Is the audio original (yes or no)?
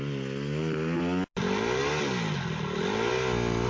yes